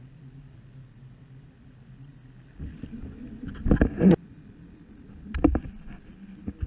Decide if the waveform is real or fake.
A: real